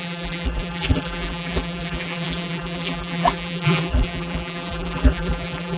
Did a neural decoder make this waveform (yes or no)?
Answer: yes